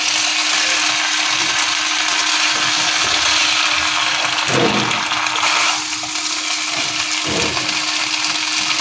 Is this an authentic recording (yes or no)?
yes